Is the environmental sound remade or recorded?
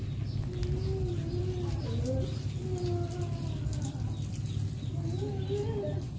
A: recorded